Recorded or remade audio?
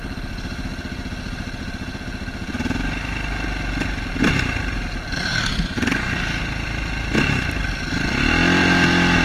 recorded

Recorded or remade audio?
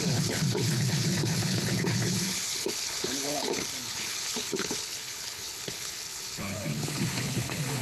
remade